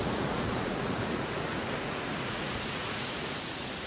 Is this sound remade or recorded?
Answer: remade